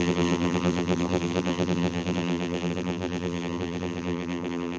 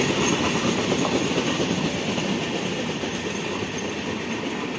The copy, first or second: first